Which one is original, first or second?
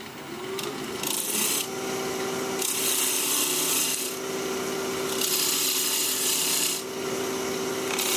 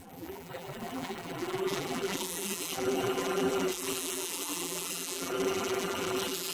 first